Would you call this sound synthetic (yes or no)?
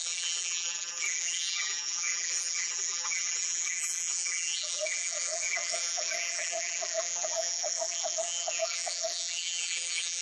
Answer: yes